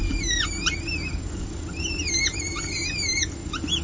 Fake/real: real